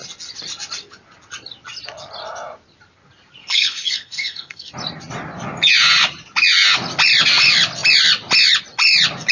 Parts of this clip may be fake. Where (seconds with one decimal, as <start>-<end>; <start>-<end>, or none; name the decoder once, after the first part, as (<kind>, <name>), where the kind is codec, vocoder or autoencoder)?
3.4-4.7 (codec, SNAC)